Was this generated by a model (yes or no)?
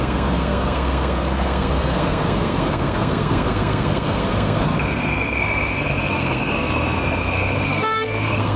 yes